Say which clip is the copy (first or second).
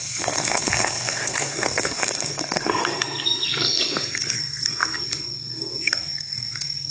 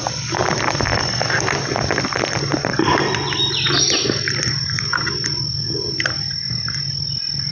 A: first